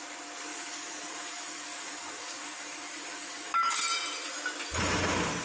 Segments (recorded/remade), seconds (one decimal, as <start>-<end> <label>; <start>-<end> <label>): 0.0-0.5 recorded; 0.5-3.7 remade; 3.7-5.4 recorded